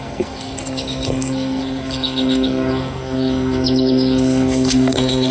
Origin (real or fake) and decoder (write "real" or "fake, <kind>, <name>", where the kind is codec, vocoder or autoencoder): fake, codec, SNAC